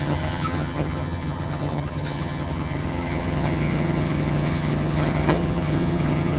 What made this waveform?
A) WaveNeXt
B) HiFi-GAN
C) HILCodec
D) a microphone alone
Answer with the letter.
B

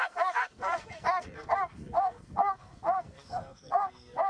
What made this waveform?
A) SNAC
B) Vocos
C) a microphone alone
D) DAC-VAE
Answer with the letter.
A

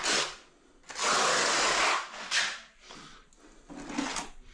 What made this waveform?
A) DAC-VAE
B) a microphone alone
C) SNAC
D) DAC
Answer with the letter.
B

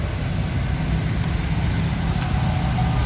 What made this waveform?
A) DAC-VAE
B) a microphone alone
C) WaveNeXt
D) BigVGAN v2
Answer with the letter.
B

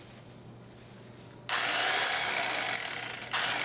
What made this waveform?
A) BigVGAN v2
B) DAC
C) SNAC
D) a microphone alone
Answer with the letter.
D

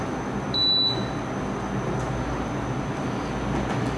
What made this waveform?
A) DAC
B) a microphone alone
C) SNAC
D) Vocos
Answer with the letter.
B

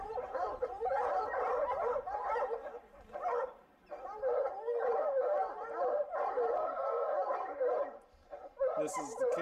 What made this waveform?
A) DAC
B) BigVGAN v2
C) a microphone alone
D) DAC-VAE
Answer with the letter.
B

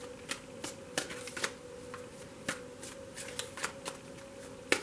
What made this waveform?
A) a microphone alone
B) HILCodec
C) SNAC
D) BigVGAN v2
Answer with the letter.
A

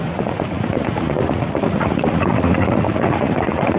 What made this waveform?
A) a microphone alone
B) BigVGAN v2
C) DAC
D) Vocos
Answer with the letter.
D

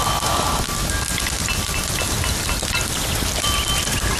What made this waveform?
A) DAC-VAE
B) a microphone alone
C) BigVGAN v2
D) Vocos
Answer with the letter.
C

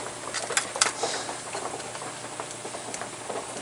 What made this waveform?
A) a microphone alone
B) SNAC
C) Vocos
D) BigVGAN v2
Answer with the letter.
A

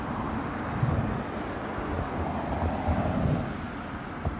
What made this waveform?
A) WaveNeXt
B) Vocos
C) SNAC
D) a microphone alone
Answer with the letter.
D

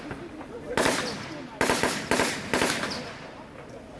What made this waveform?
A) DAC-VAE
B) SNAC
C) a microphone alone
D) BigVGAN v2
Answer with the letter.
C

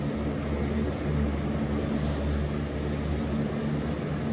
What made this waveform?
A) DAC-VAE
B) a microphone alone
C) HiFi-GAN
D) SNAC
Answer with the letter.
B